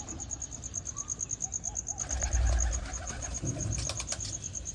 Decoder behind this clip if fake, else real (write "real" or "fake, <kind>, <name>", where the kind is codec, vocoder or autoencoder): real